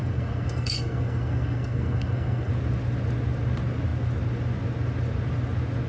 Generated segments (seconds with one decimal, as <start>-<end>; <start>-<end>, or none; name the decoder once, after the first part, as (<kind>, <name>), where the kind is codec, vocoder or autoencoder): 0.0-2.5 (codec, SNAC)